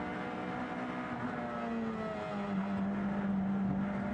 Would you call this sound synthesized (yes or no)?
no